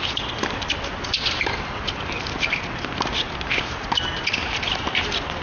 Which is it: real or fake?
real